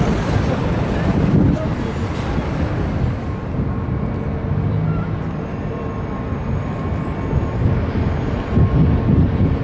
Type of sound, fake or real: real